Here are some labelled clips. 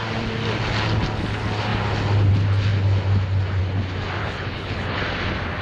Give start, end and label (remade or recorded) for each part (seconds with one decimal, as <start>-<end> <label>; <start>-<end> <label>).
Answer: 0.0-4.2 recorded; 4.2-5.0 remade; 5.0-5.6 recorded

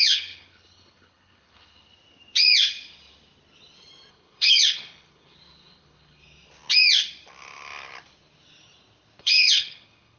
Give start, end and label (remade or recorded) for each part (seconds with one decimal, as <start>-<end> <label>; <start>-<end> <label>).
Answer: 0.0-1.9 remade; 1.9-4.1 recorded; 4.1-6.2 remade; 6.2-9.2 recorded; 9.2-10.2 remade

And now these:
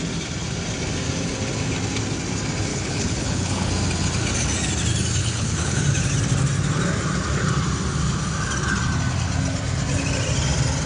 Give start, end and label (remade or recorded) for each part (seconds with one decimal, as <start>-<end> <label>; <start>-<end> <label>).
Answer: 0.0-2.7 recorded; 2.7-3.7 remade; 3.7-5.2 recorded; 5.2-5.8 remade; 5.8-10.9 recorded